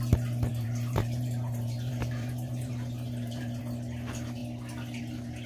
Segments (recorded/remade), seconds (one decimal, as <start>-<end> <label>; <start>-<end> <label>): 0.0-0.5 recorded; 0.5-3.6 remade; 3.6-5.5 recorded